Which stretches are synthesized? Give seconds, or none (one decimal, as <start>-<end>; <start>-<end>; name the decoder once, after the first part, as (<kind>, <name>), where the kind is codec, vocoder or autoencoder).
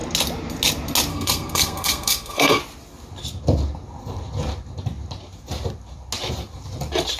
1.1-2.6 (codec, SNAC)